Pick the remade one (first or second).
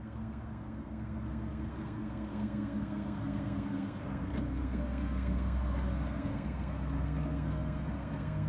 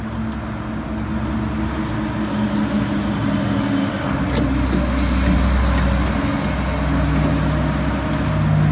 first